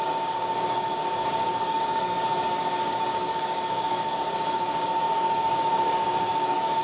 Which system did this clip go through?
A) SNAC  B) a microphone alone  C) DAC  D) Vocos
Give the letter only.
C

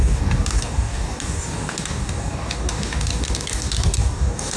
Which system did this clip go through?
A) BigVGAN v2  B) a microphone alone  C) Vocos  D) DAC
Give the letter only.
D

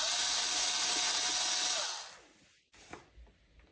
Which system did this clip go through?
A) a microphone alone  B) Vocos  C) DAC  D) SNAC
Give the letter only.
A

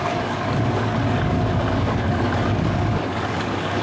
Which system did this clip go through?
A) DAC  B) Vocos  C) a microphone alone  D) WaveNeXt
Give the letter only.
A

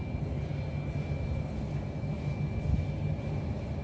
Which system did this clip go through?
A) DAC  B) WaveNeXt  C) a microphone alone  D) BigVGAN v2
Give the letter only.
C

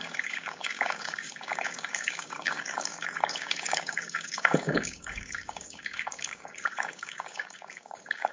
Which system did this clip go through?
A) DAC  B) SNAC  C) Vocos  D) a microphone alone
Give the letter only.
A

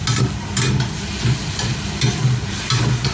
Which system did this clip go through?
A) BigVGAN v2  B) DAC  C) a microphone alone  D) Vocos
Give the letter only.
C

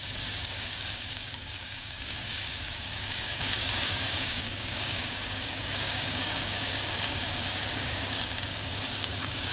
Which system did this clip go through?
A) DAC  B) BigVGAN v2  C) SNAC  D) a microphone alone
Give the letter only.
A